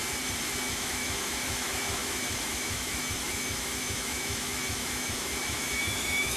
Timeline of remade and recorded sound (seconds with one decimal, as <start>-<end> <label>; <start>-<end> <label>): 0.0-0.7 recorded; 0.7-6.4 remade

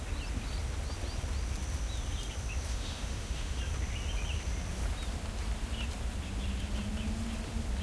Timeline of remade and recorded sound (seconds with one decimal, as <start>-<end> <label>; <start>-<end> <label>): 0.0-2.7 recorded; 2.7-3.6 remade; 3.6-7.8 recorded

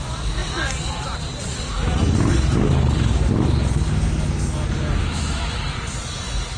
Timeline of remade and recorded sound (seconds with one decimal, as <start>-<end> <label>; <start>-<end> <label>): 0.0-5.0 recorded; 5.0-5.6 remade; 5.6-6.6 recorded

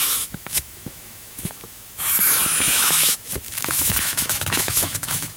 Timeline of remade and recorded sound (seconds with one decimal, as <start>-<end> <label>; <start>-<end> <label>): 0.0-5.4 remade